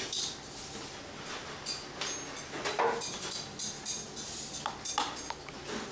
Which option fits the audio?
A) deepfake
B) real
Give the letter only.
B